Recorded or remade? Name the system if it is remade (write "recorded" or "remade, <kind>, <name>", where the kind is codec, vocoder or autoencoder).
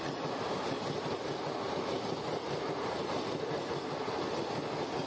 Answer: recorded